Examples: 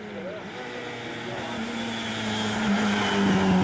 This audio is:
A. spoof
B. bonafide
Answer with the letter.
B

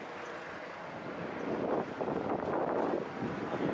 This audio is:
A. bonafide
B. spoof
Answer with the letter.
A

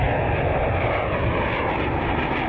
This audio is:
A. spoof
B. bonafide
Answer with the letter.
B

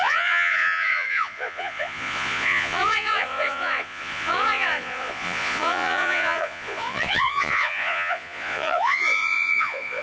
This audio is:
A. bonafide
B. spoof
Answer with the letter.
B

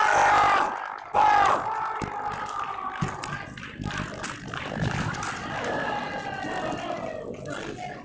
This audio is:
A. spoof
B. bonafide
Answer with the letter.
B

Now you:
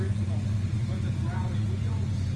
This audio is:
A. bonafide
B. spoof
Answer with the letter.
B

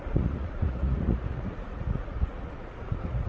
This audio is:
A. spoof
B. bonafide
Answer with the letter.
A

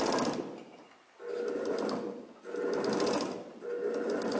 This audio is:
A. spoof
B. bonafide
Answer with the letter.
B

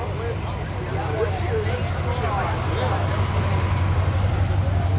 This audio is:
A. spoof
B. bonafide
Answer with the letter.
B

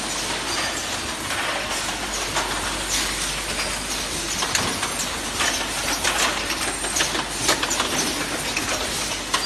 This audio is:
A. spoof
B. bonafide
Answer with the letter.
B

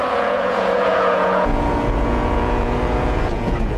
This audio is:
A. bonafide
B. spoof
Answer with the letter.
B